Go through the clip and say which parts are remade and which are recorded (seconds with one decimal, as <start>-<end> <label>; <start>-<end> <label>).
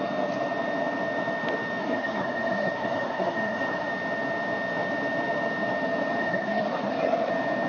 0.0-1.8 recorded; 1.8-3.9 remade; 3.9-6.2 recorded; 6.2-7.3 remade; 7.3-7.7 recorded